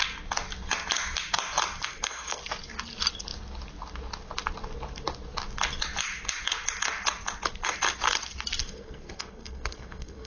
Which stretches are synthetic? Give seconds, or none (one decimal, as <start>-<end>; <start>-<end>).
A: 1.9-2.4; 8.6-10.3